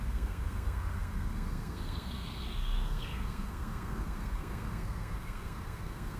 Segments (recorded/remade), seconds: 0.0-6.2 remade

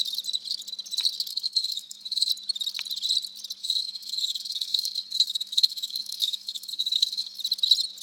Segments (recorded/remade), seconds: 0.0-1.3 recorded; 1.3-2.3 remade; 2.3-3.6 recorded; 3.6-7.4 remade; 7.4-8.0 recorded